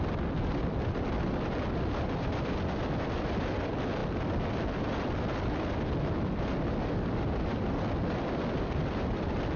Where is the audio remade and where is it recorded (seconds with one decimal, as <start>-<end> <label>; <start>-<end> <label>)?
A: 0.0-9.6 recorded